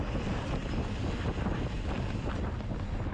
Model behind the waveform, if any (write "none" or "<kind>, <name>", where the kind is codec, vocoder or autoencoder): none